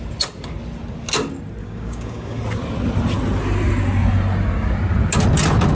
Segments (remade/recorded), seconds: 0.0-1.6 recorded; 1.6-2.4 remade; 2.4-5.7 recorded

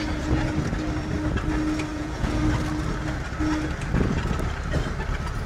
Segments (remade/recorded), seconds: 0.0-1.9 recorded; 1.9-2.4 remade; 2.4-5.5 recorded

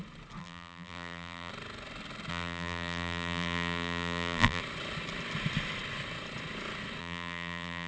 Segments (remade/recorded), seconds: 0.0-0.4 recorded; 0.4-1.5 remade; 1.5-2.3 recorded; 2.3-4.6 remade; 4.6-7.0 recorded; 7.0-7.9 remade

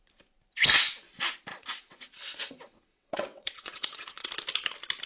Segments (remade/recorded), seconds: 0.0-1.5 recorded; 1.5-4.3 remade; 4.3-5.1 recorded

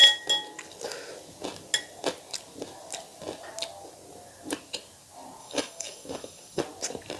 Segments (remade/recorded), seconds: 0.0-5.4 recorded; 5.4-6.6 remade; 6.6-7.2 recorded

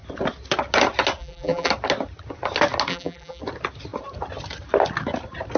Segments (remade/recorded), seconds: 0.0-1.2 recorded; 1.2-1.7 remade; 1.7-2.9 recorded; 2.9-3.4 remade; 3.4-5.6 recorded